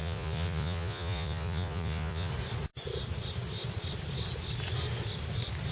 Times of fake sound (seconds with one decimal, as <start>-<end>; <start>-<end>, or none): 0.0-2.3